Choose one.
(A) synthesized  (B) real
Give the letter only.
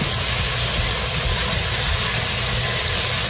B